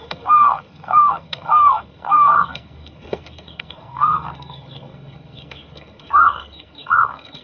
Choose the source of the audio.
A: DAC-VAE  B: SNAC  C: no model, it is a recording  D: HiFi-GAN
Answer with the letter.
B